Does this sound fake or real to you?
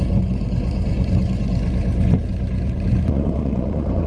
fake